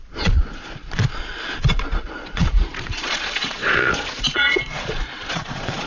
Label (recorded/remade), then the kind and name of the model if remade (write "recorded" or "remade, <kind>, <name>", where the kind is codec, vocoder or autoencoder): remade, vocoder, Vocos